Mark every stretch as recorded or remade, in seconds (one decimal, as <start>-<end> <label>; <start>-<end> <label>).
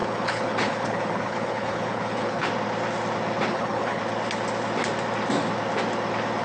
0.0-2.5 remade; 2.5-3.5 recorded; 3.5-4.0 remade; 4.0-6.4 recorded